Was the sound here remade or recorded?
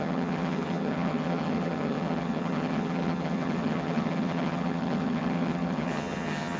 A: remade